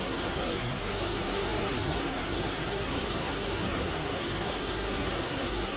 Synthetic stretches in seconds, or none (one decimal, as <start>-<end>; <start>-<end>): 0.0-5.8